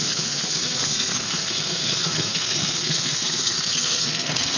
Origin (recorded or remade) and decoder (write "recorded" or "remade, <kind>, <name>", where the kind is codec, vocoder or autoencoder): remade, codec, SNAC